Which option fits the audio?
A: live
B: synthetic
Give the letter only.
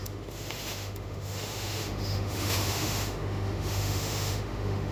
B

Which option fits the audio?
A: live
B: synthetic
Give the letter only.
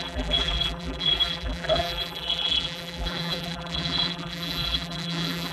B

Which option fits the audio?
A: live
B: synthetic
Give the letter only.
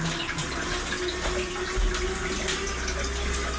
A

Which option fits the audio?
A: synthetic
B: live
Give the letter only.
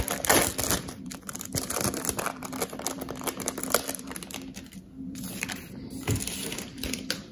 A